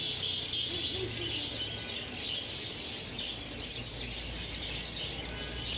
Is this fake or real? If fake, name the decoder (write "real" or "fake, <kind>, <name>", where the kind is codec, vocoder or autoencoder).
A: real